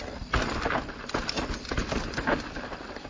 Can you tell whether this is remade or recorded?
recorded